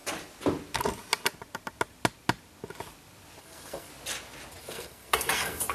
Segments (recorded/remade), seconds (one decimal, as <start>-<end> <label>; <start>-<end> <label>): 0.0-3.4 recorded; 3.4-3.9 remade; 3.9-4.6 recorded; 4.6-5.7 remade